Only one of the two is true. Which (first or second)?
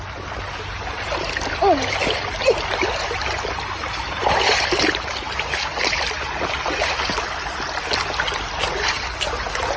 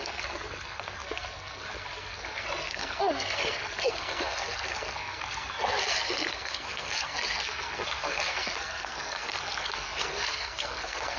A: first